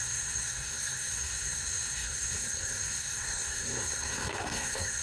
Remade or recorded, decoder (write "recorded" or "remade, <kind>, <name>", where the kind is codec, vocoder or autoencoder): remade, codec, SNAC